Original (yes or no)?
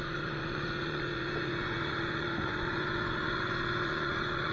no